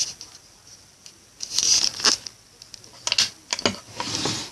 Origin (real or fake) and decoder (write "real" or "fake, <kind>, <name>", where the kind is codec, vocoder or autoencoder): real